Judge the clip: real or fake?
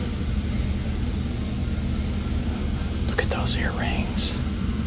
real